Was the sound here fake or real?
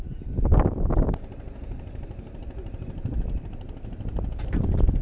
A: real